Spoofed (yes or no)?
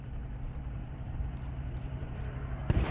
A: yes